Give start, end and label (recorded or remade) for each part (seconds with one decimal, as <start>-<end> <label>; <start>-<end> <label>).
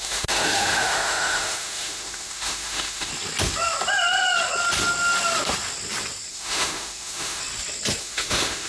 0.0-3.1 remade; 3.1-6.3 recorded; 6.3-7.4 remade; 7.4-8.0 recorded; 8.0-8.7 remade